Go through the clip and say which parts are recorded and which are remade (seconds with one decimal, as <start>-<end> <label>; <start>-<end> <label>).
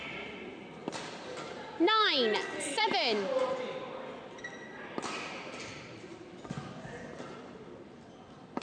0.0-8.6 remade